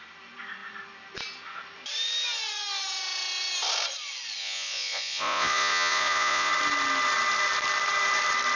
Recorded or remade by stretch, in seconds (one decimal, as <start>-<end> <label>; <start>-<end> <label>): 0.0-4.4 recorded; 4.4-6.5 remade; 6.5-8.6 recorded